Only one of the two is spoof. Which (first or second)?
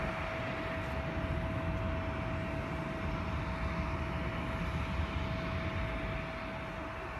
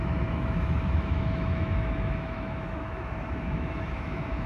second